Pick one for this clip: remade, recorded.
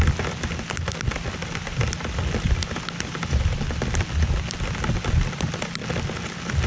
recorded